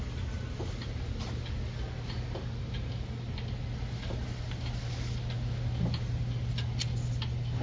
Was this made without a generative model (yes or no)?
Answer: yes